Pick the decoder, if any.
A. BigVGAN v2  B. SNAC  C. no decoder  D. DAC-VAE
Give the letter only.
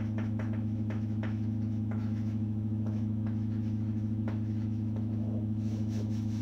D